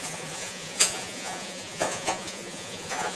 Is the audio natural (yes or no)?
no